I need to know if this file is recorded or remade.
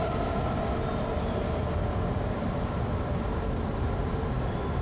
recorded